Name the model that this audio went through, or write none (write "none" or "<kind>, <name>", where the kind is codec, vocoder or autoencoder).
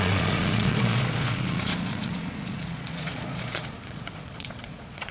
vocoder, Vocos